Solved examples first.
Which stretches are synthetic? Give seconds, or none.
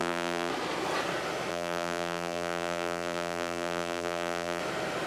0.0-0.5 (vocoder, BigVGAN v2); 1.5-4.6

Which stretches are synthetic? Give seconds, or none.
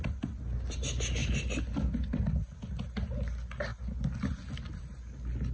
none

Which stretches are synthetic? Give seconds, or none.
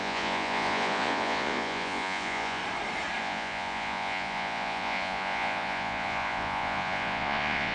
0.0-2.6 (vocoder, Vocos); 3.2-7.7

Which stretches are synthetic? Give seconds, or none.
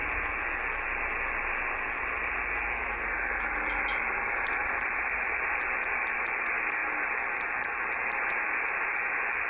4.6-5.3 (vocoder, BigVGAN v2)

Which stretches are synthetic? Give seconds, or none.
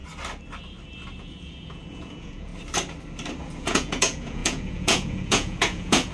1.2-2.5 (vocoder, Vocos); 3.4-6.1